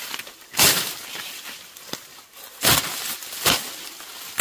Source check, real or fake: real